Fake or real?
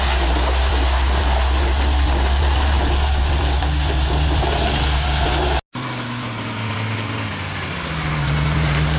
real